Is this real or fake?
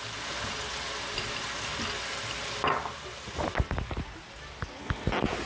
real